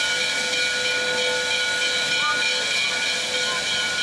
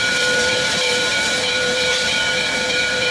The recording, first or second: first